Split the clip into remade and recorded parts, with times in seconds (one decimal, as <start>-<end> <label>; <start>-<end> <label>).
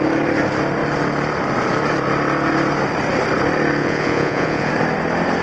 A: 0.0-3.8 recorded; 3.8-4.7 remade; 4.7-5.4 recorded